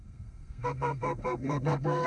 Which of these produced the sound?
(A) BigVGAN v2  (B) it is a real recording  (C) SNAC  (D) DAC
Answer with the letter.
C